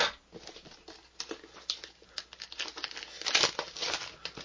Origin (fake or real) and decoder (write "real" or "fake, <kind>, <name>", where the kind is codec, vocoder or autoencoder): real